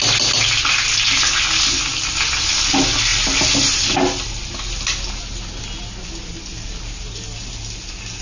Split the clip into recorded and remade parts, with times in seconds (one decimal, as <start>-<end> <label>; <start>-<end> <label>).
0.0-8.2 recorded